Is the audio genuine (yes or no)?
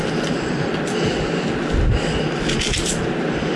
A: yes